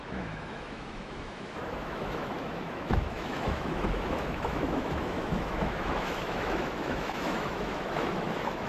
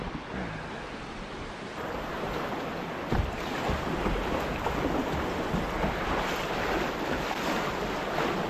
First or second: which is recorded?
second